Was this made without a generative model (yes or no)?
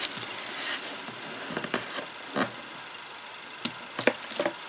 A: yes